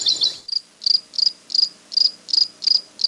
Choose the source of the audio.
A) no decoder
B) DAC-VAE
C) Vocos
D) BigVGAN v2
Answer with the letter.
A